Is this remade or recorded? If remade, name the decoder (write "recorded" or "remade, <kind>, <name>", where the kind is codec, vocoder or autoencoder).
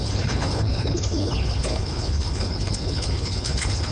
remade, codec, HILCodec